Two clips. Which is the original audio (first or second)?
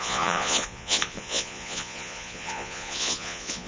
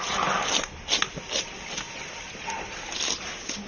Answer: second